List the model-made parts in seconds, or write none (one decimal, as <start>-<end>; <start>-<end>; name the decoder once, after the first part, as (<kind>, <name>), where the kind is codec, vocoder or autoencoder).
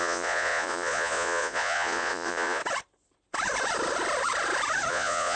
0.0-2.6 (vocoder, Vocos); 4.9-5.4